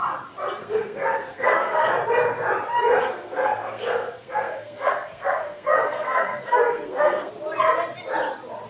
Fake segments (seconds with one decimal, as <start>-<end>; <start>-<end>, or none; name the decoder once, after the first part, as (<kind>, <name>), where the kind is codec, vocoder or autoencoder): 0.6-1.8 (codec, SNAC); 3.0-7.3